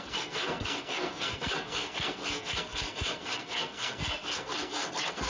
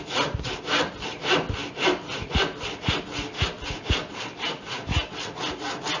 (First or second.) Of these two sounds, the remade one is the first